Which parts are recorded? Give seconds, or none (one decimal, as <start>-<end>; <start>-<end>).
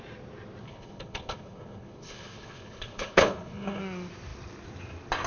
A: 0.0-0.6; 3.8-5.3